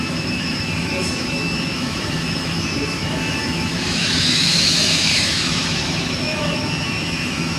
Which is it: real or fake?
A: fake